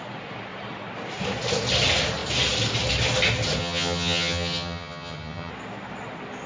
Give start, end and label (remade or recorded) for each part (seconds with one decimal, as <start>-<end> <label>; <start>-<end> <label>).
0.0-3.6 recorded; 3.6-5.5 remade; 5.5-6.5 recorded